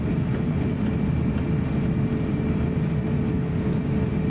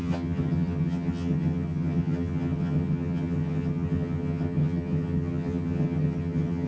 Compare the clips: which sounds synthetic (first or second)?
second